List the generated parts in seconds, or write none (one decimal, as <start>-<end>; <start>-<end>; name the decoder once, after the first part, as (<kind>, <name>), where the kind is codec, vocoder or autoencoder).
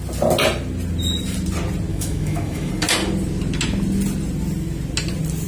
1.9-2.7 (autoencoder, DAC-VAE)